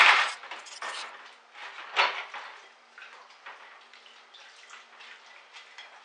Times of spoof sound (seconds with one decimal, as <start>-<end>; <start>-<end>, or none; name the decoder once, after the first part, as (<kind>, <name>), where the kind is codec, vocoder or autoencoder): none